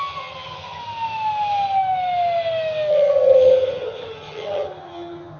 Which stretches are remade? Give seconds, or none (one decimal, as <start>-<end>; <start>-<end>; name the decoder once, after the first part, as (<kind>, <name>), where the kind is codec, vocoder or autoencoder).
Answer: 0.0-0.8 (vocoder, HiFi-GAN); 2.9-5.4